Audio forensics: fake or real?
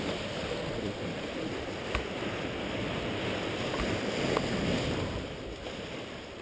real